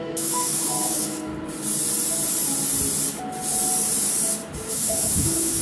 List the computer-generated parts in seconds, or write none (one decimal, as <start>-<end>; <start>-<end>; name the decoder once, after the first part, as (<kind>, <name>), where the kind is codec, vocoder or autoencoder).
0.0-1.3 (autoencoder, DAC-VAE); 4.7-5.6